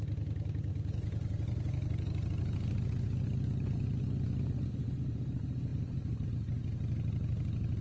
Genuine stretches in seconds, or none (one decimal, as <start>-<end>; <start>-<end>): 0.0-5.7; 6.3-7.8